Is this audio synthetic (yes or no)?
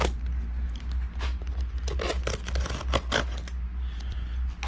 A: no